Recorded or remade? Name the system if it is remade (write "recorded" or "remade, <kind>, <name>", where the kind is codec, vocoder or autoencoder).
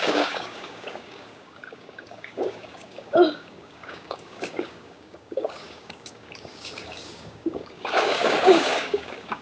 remade, codec, DAC